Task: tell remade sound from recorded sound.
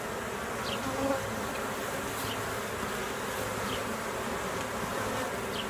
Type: recorded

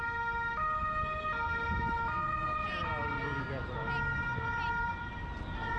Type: recorded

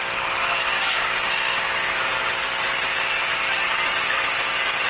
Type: recorded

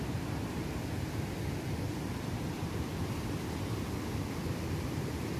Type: recorded